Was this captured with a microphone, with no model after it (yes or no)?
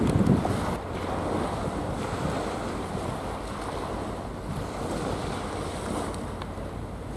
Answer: yes